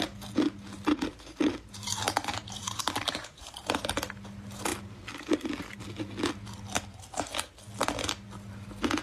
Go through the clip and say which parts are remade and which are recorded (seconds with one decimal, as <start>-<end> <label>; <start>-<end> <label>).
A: 0.0-1.1 recorded; 1.1-3.9 remade; 3.9-9.0 recorded